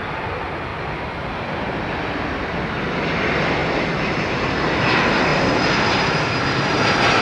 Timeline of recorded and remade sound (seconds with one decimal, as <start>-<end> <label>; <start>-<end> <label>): 0.0-7.2 recorded